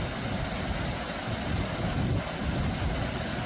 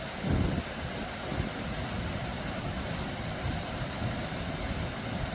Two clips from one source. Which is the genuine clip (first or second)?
first